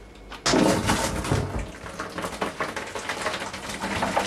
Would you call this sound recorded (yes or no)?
yes